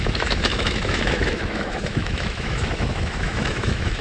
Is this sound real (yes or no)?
no